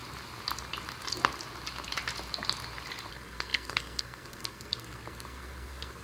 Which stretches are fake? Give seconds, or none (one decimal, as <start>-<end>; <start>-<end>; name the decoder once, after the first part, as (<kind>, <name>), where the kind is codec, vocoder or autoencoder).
3.1-6.0 (codec, SNAC)